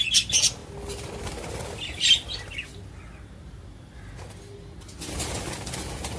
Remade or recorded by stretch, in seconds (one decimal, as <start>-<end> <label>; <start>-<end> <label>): 0.0-6.2 recorded